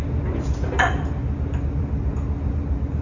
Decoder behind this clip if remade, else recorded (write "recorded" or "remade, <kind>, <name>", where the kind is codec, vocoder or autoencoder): recorded